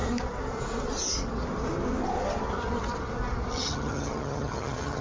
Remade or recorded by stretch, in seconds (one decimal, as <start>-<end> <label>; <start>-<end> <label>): 0.0-3.5 recorded; 3.5-5.0 remade

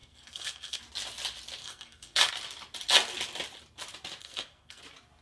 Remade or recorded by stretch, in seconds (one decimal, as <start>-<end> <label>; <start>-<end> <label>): 0.0-0.8 remade; 0.8-1.6 recorded; 1.6-2.3 remade; 2.3-4.2 recorded; 4.2-4.8 remade; 4.8-5.2 recorded

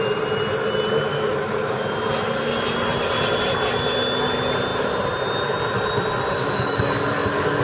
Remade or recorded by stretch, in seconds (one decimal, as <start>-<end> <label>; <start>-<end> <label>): 0.0-1.1 recorded; 1.1-1.8 remade; 1.8-6.4 recorded; 6.4-7.6 remade

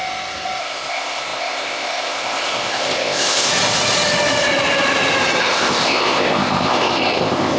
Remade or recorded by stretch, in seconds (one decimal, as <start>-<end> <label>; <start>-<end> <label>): 0.0-0.6 recorded; 0.6-3.5 remade; 3.5-5.4 recorded; 5.4-7.6 remade

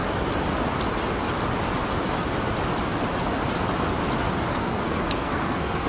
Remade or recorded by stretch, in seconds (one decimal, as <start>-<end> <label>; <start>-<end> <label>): 0.0-4.5 recorded; 4.5-5.9 remade